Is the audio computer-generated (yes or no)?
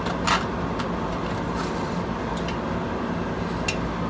no